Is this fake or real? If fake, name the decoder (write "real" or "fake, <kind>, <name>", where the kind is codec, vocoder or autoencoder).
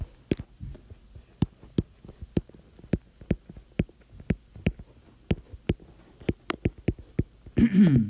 real